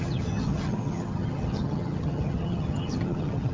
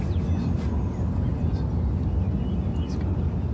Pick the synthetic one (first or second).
first